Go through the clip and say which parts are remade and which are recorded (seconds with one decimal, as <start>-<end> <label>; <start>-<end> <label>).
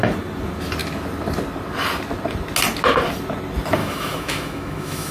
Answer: 0.0-3.8 recorded; 3.8-5.1 remade